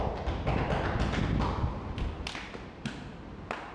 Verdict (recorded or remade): recorded